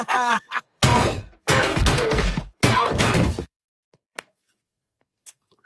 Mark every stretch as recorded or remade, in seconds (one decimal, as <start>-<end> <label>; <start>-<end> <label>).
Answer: 0.0-5.7 remade